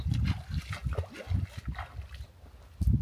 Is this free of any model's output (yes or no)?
yes